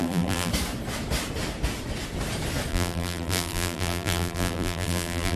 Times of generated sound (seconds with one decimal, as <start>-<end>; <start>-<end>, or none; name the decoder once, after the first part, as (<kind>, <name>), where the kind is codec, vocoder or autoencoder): 0.0-0.5 (vocoder, BigVGAN v2); 2.7-5.4